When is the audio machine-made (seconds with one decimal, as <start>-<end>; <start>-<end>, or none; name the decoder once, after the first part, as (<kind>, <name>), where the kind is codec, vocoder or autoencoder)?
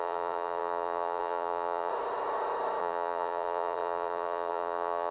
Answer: 0.0-1.9 (vocoder, BigVGAN v2); 2.8-5.1